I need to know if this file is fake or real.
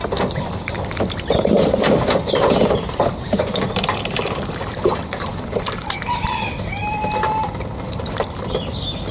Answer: fake